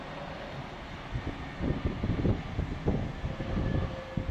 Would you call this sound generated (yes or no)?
no